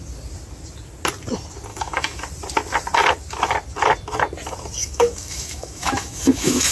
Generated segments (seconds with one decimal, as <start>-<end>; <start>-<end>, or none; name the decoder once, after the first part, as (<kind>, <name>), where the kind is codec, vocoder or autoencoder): 1.7-2.2 (autoencoder, DAC-VAE); 4.8-6.7